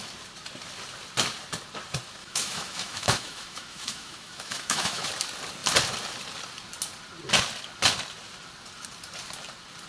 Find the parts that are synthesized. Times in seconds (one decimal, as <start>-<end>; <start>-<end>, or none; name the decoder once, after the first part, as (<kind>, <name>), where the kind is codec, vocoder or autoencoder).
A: 2.2-5.1 (autoencoder, DAC-VAE)